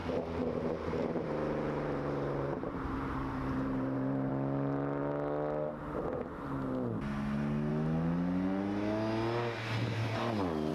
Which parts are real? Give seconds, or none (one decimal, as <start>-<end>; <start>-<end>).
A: 4.3-10.7